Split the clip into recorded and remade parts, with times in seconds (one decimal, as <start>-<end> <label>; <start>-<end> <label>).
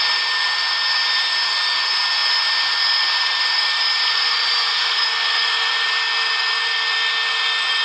0.0-7.8 recorded